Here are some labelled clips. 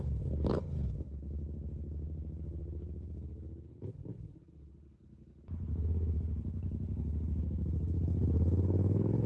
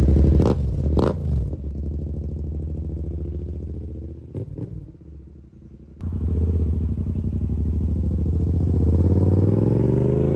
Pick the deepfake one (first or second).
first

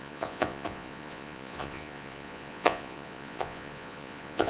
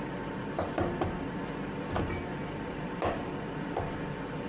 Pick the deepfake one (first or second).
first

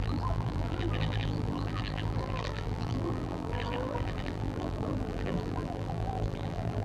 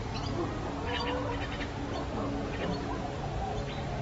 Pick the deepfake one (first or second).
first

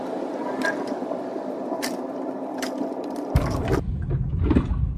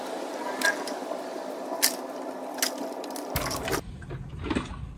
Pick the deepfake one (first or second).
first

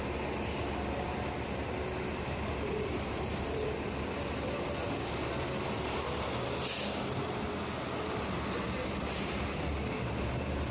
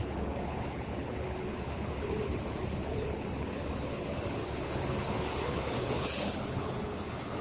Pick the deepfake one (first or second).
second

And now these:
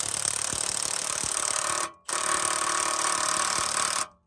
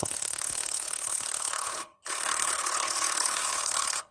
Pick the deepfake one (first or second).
second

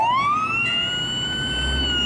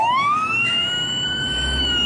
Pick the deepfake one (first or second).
second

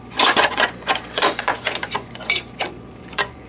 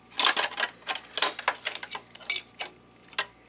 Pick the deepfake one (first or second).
first